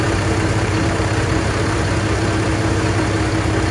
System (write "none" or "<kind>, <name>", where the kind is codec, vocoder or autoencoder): vocoder, BigVGAN v2